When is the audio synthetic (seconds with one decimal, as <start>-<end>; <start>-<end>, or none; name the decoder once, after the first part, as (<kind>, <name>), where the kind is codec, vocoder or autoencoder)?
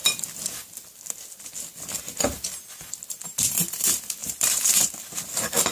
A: 4.2-4.9 (vocoder, BigVGAN v2)